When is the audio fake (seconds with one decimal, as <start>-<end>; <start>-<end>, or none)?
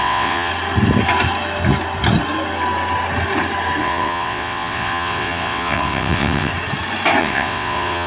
0.0-0.5; 3.8-6.5; 7.2-8.1